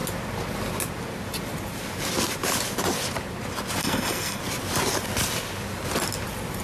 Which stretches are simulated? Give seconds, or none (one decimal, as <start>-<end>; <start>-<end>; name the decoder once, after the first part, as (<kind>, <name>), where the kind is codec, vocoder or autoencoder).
3.8-4.4 (codec, SNAC)